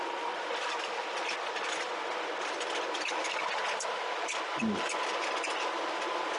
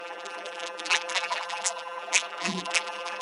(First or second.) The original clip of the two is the first